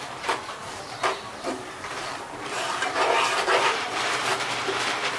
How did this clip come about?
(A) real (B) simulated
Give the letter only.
B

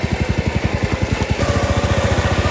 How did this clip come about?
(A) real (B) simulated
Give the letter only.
A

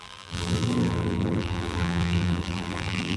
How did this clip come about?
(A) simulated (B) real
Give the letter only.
A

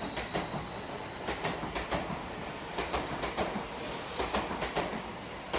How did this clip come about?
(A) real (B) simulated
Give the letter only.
B